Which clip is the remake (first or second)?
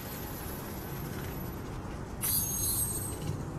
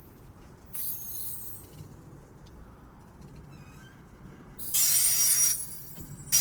second